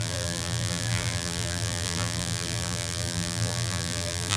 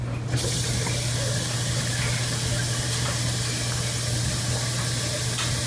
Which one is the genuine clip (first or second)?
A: second